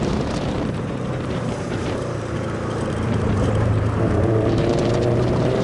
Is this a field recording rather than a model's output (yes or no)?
no